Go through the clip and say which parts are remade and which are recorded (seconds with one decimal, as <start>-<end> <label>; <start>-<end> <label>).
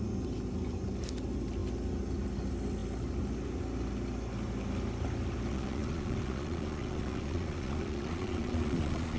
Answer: 0.0-5.5 recorded; 5.5-9.2 remade